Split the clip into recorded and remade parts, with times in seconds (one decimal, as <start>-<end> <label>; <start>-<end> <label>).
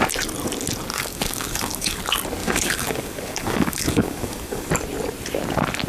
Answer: 0.0-0.9 recorded; 0.9-2.0 remade; 2.0-2.4 recorded; 2.4-4.7 remade; 4.7-5.9 recorded